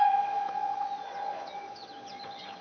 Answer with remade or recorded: remade